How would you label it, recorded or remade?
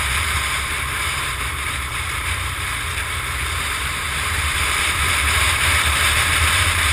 remade